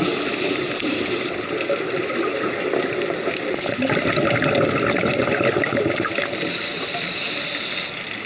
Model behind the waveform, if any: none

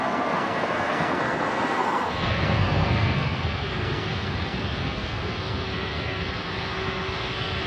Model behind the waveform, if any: codec, SNAC